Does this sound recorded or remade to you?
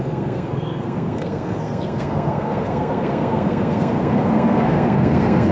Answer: remade